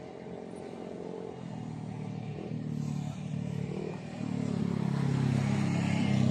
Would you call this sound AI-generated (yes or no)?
no